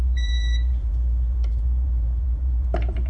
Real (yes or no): no